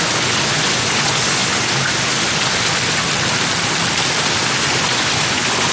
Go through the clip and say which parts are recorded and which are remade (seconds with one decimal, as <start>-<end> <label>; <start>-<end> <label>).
0.0-3.0 remade; 3.0-4.5 recorded; 4.5-5.7 remade